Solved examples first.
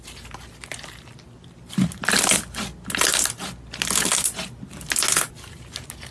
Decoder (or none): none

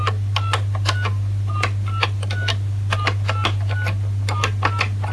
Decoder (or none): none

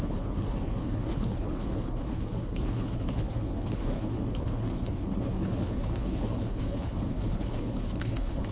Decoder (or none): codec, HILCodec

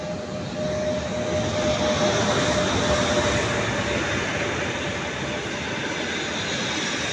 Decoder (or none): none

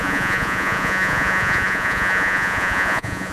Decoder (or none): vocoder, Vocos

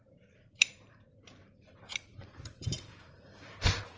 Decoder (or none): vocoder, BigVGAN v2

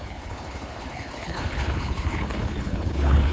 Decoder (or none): codec, HILCodec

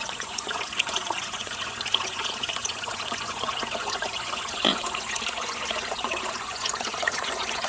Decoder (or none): vocoder, Vocos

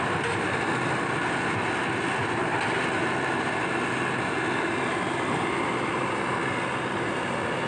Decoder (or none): none